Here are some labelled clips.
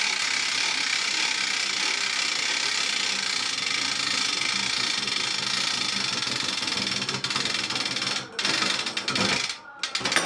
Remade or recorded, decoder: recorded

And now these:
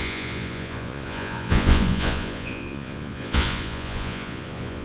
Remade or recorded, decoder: remade, vocoder, Vocos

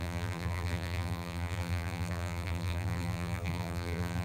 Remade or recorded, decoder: remade, vocoder, BigVGAN v2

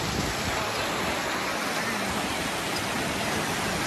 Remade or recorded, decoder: recorded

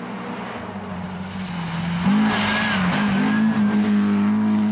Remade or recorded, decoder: recorded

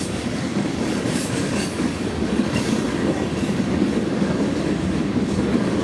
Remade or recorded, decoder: remade, codec, DAC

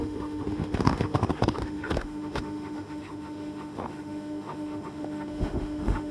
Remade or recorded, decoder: remade, autoencoder, DAC-VAE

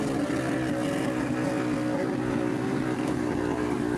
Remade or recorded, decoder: recorded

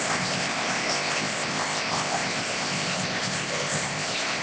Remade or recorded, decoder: remade, codec, ZipCodec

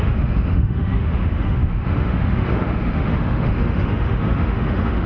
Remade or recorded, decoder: remade, autoencoder, DAC-VAE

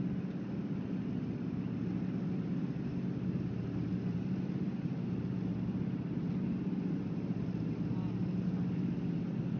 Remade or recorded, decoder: recorded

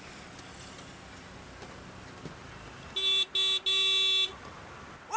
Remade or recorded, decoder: recorded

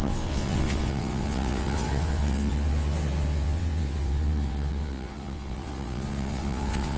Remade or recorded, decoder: remade, vocoder, WaveNeXt